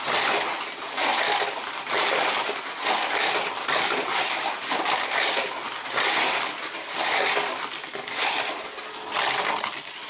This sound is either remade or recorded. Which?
recorded